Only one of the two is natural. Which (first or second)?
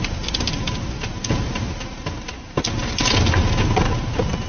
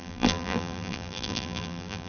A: first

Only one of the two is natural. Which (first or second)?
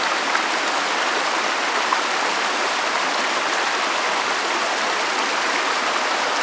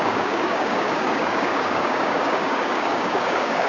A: first